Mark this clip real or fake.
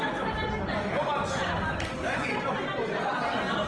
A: real